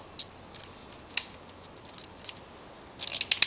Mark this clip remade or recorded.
recorded